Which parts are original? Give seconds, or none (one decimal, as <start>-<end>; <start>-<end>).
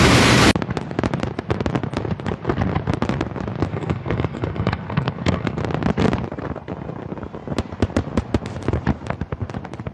0.0-3.7; 5.6-9.9